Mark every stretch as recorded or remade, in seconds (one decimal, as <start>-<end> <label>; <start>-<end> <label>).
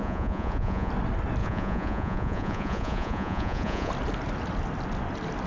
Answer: 0.0-0.9 remade; 0.9-1.4 recorded; 1.4-3.9 remade; 3.9-5.5 recorded